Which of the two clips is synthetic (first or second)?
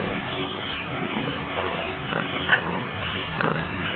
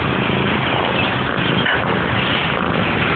first